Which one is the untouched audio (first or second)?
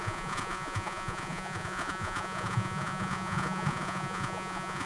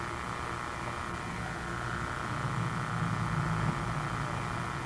second